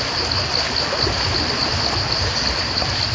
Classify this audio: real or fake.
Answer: real